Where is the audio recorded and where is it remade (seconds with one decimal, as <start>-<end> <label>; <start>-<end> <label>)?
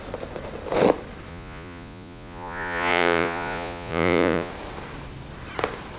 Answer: 0.0-1.3 recorded; 1.3-4.5 remade; 4.5-6.0 recorded